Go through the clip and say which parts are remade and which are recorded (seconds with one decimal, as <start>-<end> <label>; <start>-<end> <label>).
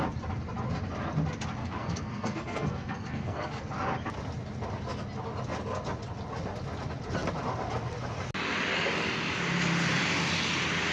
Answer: 0.0-1.6 recorded; 1.6-3.6 remade; 3.6-10.9 recorded